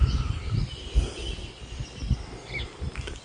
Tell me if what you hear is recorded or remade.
recorded